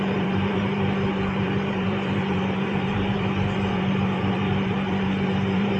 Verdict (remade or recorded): remade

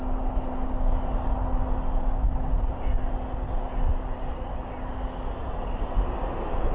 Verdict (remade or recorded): recorded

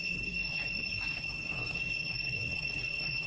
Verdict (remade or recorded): remade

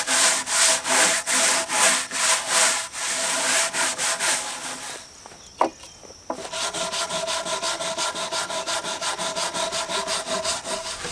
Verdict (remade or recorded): recorded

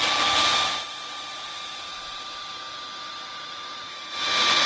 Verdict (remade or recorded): recorded